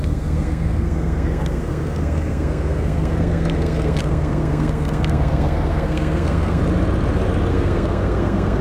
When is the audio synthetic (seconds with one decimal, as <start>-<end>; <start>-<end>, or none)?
0.0-6.6; 7.5-8.6